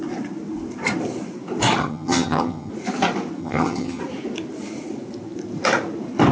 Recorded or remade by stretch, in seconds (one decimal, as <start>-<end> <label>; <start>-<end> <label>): 0.0-1.8 recorded; 1.8-2.7 remade; 2.7-3.4 recorded; 3.4-4.0 remade; 4.0-6.3 recorded